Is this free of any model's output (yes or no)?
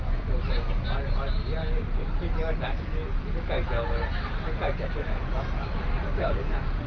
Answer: yes